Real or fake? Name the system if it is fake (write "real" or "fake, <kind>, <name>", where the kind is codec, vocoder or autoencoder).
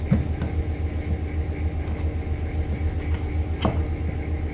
real